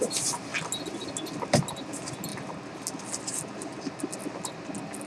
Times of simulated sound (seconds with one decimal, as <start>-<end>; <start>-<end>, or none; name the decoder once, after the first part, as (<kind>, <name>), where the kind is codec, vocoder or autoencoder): none